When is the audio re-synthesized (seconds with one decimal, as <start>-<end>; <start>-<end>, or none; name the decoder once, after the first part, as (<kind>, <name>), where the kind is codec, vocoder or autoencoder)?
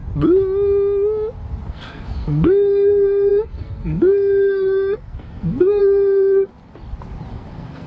1.7-6.5 (codec, SNAC); 7.3-7.9